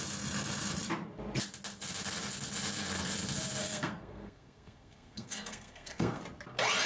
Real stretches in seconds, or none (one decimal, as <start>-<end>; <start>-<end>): 0.0-3.6; 6.2-6.9